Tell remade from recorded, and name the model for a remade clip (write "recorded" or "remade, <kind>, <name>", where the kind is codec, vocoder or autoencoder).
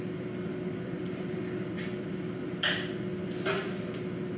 recorded